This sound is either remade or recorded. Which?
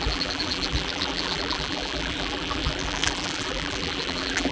remade